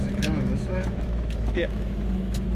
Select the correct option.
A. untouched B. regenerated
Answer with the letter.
B